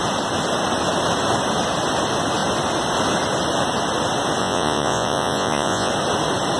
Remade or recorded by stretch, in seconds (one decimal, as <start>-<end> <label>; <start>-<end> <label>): 0.0-4.4 recorded; 4.4-5.9 remade; 5.9-6.6 recorded